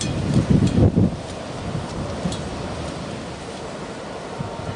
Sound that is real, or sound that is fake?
real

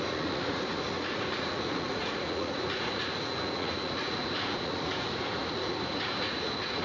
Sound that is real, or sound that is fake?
fake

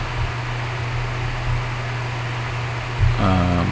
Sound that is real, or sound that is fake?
real